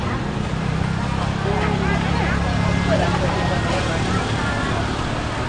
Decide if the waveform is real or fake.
real